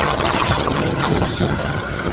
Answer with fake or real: fake